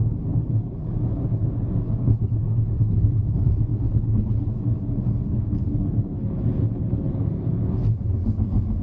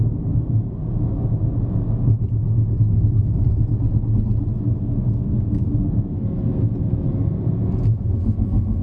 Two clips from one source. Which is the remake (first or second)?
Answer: first